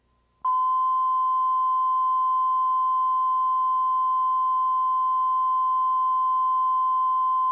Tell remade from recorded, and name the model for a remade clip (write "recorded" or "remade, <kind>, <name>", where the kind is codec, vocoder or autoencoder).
recorded